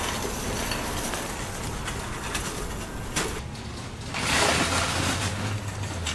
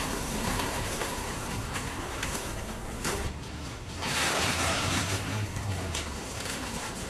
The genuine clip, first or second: first